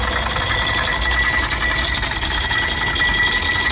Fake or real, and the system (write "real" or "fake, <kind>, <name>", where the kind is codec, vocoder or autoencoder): real